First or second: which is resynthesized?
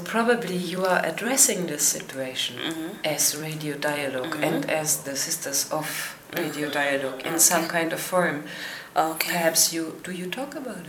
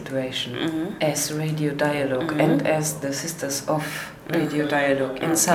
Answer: first